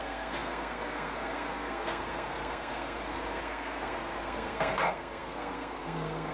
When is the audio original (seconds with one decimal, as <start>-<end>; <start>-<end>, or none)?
none